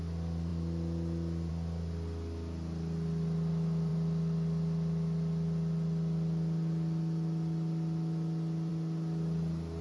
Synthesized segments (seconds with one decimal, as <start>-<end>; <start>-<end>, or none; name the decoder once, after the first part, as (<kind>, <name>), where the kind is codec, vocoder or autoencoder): none

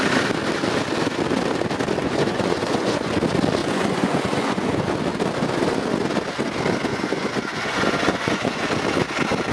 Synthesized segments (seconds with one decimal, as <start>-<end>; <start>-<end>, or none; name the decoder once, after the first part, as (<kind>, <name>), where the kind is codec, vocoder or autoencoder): 2.0-3.1 (vocoder, Vocos); 3.6-4.9; 6.9-8.7